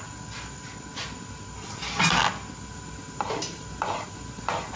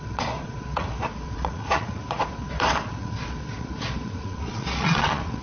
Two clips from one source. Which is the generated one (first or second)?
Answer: second